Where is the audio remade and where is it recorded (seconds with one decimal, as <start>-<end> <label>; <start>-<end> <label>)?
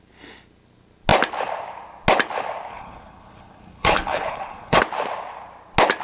0.0-2.7 recorded; 2.7-4.8 remade; 4.8-6.0 recorded